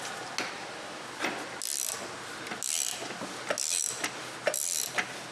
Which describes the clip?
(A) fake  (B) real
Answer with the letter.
B